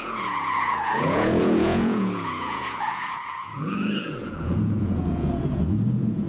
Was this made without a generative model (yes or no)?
no